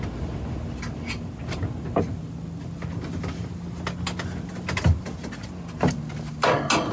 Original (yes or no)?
yes